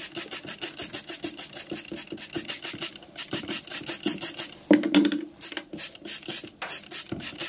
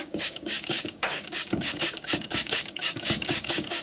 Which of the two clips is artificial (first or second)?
second